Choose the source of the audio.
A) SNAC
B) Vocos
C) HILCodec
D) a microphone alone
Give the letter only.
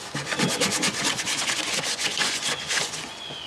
B